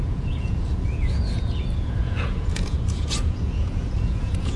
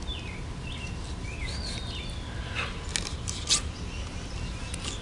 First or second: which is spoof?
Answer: first